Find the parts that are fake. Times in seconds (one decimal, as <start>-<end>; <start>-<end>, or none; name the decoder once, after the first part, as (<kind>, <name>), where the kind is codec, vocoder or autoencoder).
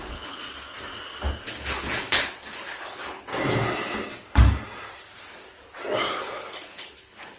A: 0.0-0.4 (codec, HILCodec); 1.5-3.3; 6.1-7.4